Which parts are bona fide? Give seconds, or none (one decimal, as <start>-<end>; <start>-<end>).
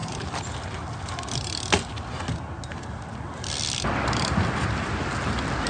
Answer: 0.0-5.7